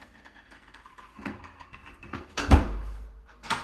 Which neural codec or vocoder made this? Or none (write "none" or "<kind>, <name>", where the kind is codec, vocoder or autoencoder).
codec, SNAC